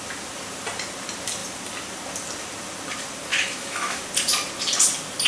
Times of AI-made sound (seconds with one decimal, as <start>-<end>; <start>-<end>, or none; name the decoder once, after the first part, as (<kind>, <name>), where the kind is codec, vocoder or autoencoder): 3.3-4.0 (autoencoder, DAC-VAE)